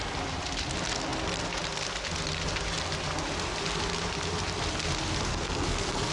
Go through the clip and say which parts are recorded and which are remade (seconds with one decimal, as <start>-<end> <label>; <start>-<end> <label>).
0.0-5.3 recorded; 5.3-6.1 remade